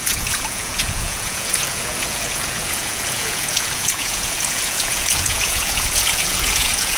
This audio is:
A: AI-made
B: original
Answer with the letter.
A